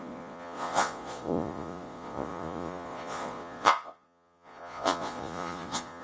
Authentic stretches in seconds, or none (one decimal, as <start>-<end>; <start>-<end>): none